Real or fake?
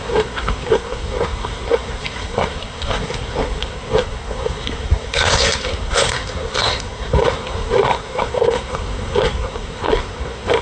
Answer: fake